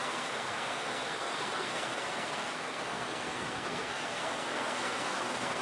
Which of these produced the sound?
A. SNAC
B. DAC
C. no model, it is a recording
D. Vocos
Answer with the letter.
A